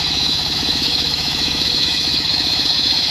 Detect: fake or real fake